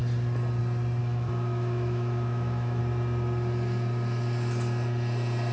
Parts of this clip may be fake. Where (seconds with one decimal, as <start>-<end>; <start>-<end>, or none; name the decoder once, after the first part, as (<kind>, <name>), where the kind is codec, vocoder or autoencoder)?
1.0-2.8 (autoencoder, DAC-VAE)